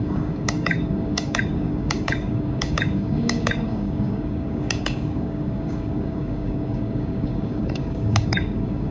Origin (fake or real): fake